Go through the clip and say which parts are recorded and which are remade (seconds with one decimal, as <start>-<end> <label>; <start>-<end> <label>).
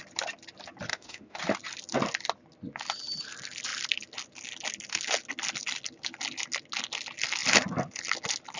0.0-0.9 recorded; 0.9-1.4 remade; 1.4-8.6 recorded